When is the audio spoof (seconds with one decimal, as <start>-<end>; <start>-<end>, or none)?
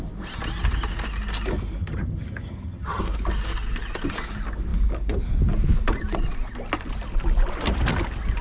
1.8-3.0